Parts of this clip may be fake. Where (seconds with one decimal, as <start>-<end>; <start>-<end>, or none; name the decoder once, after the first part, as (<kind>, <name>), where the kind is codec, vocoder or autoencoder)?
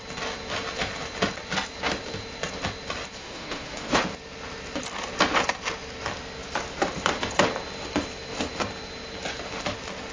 3.2-4.0 (autoencoder, DAC-VAE)